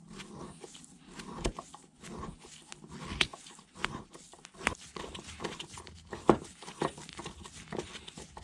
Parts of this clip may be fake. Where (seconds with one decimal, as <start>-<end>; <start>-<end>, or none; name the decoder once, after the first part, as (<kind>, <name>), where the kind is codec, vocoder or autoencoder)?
none